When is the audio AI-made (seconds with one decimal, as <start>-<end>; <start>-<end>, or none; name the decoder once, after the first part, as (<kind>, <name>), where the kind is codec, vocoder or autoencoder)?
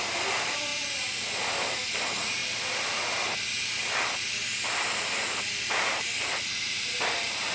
none